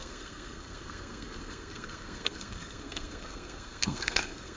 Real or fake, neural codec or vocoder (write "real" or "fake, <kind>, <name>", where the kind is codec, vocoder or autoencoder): fake, codec, SNAC